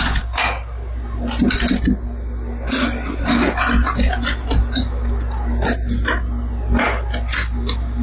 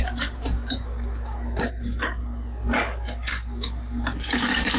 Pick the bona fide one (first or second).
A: first